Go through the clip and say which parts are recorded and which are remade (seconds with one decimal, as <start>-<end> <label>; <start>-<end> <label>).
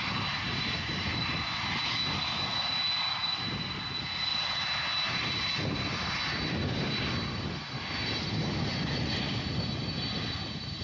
0.0-8.7 recorded; 8.7-9.3 remade; 9.3-10.8 recorded